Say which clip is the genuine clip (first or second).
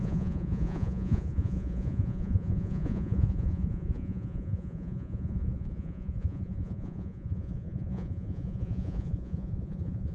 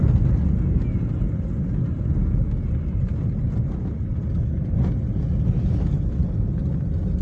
second